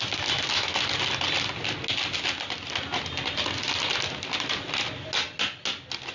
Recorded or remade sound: recorded